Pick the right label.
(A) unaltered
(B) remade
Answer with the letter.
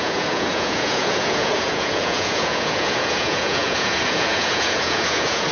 B